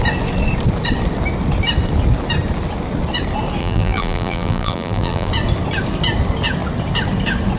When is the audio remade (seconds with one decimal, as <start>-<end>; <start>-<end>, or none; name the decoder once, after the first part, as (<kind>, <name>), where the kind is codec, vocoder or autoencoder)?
3.6-5.3 (vocoder, BigVGAN v2)